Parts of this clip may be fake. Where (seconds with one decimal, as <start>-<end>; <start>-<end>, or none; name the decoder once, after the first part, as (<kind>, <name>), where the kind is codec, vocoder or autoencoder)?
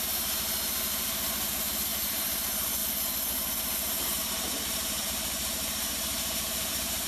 0.0-2.8 (vocoder, BigVGAN v2); 3.6-7.1